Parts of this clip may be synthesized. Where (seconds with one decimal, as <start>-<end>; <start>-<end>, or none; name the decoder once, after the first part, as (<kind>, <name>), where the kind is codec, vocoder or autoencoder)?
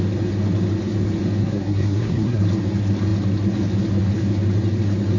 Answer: 1.4-2.4 (codec, SNAC)